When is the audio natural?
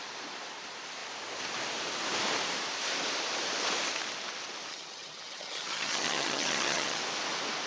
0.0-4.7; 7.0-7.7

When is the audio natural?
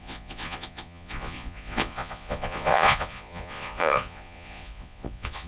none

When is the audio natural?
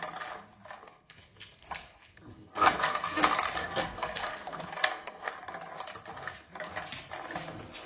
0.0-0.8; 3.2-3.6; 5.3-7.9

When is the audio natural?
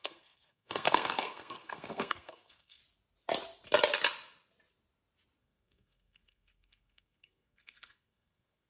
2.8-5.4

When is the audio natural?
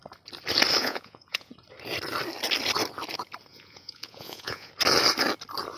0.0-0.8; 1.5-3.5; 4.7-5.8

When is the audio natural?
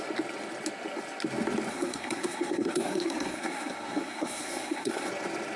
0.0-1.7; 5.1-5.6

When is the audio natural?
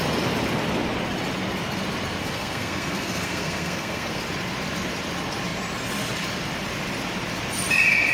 0.0-2.2; 4.2-8.1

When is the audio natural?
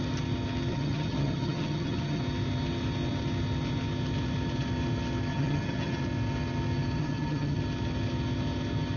0.0-0.7; 2.2-5.3; 6.0-7.0; 7.6-9.0